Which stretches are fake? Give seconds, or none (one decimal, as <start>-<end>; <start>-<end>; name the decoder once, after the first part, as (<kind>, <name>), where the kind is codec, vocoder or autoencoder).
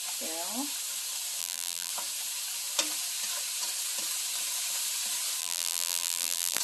1.4-1.9 (vocoder, BigVGAN v2); 5.4-6.6